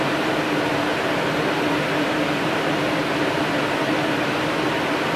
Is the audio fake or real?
real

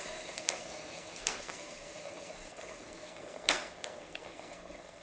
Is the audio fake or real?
fake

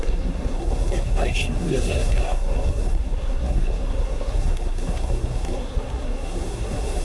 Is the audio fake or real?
fake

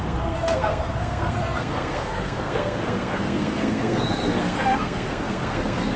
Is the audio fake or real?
fake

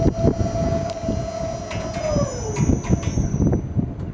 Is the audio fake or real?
real